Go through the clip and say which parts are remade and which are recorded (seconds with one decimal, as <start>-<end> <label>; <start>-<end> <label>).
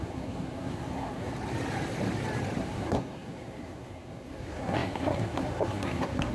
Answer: 0.0-1.3 remade; 1.3-2.6 recorded; 2.6-6.3 remade